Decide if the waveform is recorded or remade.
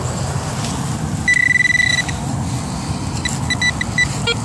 recorded